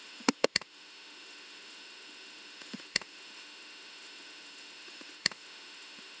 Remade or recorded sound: remade